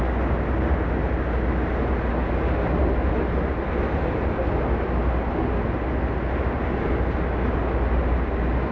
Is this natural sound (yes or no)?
yes